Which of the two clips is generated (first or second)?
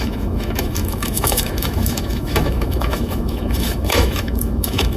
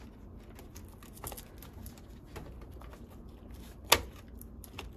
first